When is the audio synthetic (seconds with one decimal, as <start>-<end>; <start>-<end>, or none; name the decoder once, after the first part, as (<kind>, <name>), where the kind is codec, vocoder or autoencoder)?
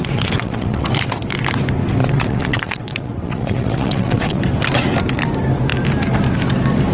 0.0-0.9 (vocoder, WaveNeXt); 2.0-4.4